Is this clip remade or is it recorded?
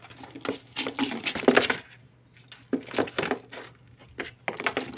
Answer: recorded